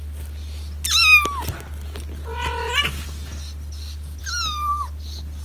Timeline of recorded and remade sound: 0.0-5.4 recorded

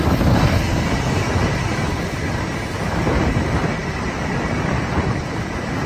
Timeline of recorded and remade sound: 0.0-3.8 recorded; 3.8-5.2 remade; 5.2-5.9 recorded

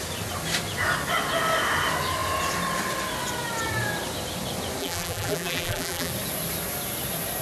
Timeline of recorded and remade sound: 0.0-4.8 recorded; 4.8-6.1 remade; 6.1-7.4 recorded